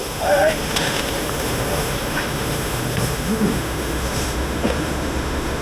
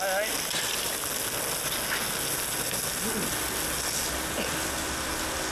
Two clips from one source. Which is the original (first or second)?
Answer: second